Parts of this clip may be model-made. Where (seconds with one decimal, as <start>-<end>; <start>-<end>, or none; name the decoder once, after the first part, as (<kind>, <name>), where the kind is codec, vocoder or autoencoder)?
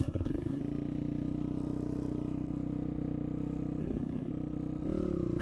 0.0-0.6 (codec, SNAC); 3.8-4.3